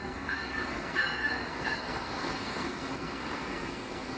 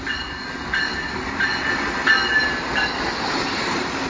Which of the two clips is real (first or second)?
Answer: second